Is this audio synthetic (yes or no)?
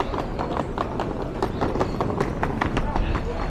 no